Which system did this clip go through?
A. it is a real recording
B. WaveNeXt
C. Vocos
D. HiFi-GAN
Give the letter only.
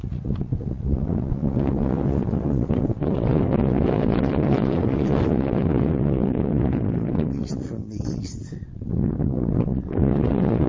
B